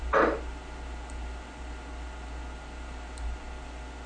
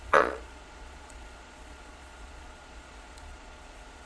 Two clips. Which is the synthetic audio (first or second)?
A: second